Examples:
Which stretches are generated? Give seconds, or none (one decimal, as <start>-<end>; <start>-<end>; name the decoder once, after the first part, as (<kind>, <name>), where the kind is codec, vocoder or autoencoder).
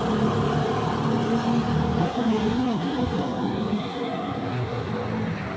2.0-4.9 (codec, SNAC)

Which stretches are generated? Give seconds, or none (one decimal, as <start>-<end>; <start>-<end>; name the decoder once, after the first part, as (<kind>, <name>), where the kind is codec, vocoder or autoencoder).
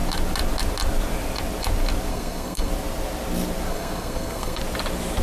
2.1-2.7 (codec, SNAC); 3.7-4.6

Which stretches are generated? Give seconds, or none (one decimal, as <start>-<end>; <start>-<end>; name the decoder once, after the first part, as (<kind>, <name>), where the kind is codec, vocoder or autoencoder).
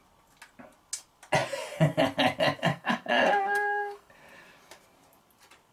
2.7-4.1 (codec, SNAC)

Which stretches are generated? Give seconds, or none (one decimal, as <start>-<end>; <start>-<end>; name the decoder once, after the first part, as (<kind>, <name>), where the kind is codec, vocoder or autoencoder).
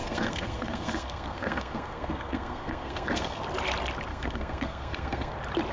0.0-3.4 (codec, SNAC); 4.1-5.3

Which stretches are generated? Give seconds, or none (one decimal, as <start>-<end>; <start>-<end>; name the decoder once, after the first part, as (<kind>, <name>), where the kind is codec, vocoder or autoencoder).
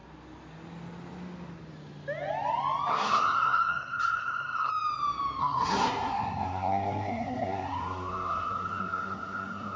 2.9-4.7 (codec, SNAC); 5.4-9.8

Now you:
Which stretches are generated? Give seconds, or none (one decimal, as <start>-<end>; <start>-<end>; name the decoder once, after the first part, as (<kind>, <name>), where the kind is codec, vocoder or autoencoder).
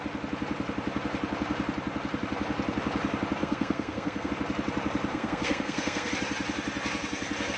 3.4-4.3 (codec, SNAC); 5.1-6.1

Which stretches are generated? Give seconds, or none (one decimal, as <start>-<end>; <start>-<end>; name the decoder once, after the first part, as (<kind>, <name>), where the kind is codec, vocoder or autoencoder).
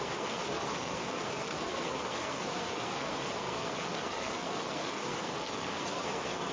0.0-6.5 (codec, SNAC)